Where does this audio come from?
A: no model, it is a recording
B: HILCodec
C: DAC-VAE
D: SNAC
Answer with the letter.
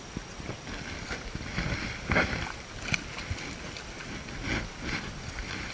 A